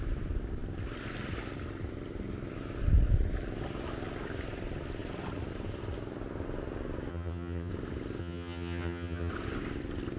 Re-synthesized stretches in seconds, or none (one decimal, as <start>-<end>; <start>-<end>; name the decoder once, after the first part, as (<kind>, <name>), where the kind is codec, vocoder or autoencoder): 7.1-7.7 (vocoder, HiFi-GAN); 8.2-9.3